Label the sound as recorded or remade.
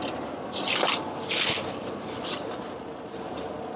recorded